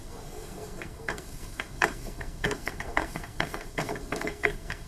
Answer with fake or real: fake